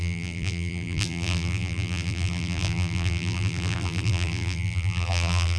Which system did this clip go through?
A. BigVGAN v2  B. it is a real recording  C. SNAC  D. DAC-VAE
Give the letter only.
A